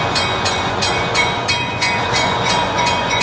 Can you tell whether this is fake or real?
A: fake